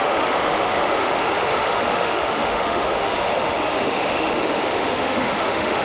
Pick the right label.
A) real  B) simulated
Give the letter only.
B